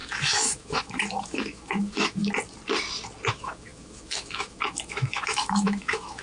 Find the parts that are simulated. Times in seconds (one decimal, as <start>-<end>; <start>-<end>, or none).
0.0-2.2; 3.3-6.2